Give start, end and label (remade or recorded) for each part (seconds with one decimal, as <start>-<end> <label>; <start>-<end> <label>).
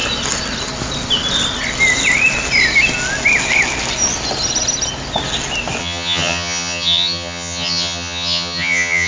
0.0-5.8 recorded; 5.8-9.1 remade